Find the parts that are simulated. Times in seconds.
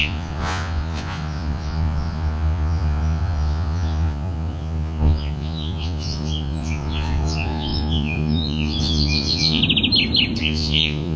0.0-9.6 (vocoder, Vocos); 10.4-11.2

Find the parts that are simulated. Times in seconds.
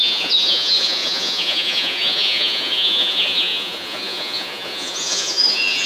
0.0-5.9 (vocoder, Vocos)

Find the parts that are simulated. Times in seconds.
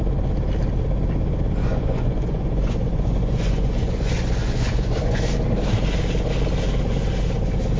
1.6-5.2 (vocoder, Vocos)